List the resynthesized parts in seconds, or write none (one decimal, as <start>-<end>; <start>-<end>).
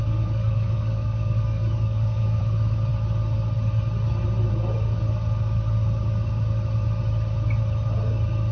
0.0-2.4